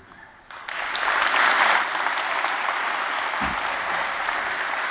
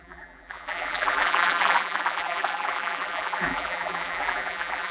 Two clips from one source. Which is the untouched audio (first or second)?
first